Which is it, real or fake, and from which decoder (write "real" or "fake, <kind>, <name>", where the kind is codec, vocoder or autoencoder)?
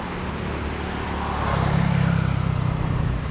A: real